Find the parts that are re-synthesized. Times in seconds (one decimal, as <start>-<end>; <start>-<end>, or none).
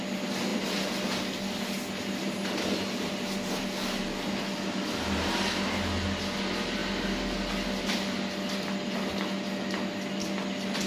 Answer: none